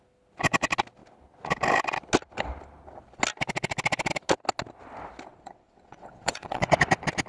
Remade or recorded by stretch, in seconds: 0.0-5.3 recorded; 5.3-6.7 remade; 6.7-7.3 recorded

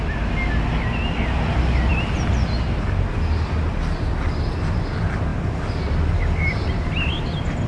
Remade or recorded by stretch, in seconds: 0.0-7.7 recorded

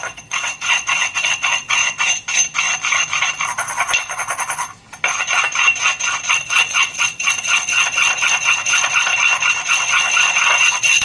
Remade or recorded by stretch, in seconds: 0.0-1.8 remade; 1.8-6.3 recorded; 6.3-9.1 remade; 9.1-9.7 recorded; 9.7-11.0 remade